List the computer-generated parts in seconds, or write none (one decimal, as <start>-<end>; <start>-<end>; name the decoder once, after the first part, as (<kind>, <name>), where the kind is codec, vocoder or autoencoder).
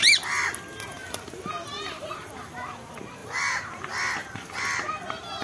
1.0-2.3 (vocoder, BigVGAN v2); 3.2-3.7